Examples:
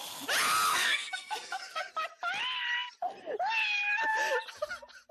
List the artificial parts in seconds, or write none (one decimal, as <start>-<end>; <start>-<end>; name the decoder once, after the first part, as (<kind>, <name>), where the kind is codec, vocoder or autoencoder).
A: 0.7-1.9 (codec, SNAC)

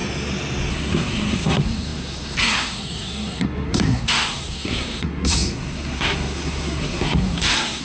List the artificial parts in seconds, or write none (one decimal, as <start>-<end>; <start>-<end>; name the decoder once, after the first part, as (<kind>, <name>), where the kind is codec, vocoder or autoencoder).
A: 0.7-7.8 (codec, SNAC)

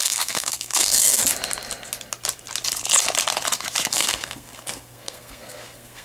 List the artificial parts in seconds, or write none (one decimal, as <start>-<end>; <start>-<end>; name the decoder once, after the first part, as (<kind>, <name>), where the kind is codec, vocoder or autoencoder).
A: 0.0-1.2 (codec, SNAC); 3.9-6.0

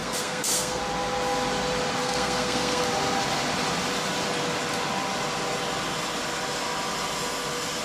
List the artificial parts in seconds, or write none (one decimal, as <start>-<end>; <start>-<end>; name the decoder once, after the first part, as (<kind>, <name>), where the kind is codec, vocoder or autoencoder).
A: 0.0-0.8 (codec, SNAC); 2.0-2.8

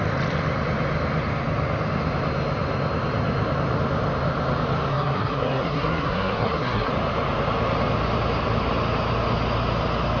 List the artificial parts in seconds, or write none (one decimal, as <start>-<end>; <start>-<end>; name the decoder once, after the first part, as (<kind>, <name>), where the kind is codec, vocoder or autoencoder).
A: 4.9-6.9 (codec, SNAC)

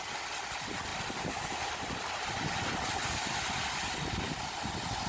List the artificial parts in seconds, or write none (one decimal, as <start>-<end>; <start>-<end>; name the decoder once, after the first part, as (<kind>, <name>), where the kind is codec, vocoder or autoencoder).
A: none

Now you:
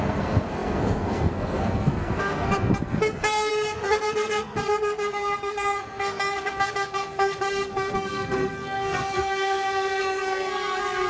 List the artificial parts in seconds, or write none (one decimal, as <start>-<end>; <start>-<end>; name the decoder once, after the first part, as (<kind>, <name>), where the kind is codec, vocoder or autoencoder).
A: 0.0-11.1 (codec, SNAC)

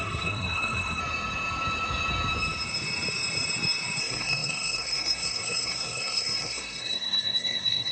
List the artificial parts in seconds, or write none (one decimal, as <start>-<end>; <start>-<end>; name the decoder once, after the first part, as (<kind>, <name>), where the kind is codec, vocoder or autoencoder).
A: 0.0-1.0 (codec, SNAC); 4.0-7.9